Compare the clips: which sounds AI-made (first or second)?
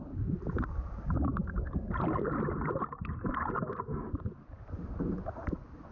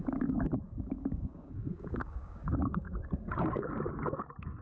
second